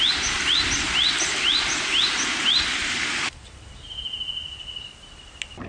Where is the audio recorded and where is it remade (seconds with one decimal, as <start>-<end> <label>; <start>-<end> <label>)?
0.0-5.7 recorded

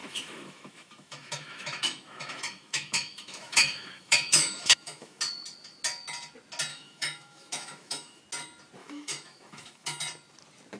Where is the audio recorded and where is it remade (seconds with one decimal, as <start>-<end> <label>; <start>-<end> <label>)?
0.0-5.2 remade; 5.2-6.7 recorded; 6.7-8.2 remade; 8.2-8.8 recorded; 8.8-10.0 remade; 10.0-10.8 recorded